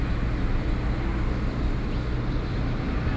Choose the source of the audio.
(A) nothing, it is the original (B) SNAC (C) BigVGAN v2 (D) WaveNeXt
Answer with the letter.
A